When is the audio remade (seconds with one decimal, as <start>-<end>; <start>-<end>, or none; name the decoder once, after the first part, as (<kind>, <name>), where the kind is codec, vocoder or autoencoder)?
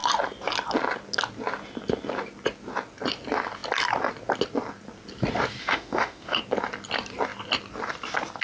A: 5.6-6.4 (autoencoder, DAC-VAE)